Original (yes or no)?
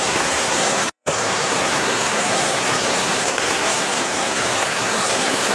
no